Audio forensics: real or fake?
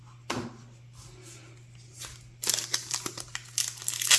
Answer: real